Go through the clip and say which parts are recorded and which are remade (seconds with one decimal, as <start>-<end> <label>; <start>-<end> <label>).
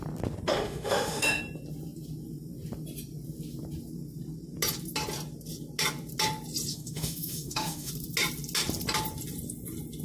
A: 0.0-0.5 recorded; 0.5-1.4 remade; 1.4-6.7 recorded; 6.7-7.9 remade; 7.9-10.0 recorded